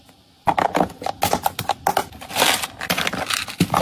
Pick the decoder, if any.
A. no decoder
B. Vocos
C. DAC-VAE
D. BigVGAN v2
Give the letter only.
A